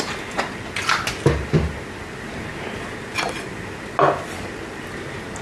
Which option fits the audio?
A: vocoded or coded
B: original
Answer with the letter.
B